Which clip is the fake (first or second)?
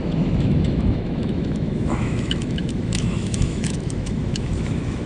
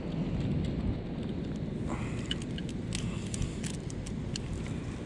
first